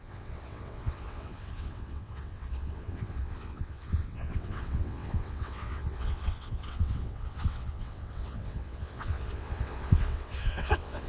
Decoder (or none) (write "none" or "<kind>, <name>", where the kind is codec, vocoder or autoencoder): vocoder, WaveNeXt